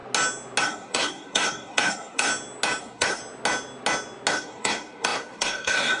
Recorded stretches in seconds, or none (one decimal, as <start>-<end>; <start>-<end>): 0.0-0.6; 2.3-2.8; 3.2-4.3